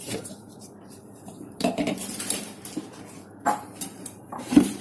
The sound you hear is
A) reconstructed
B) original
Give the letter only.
A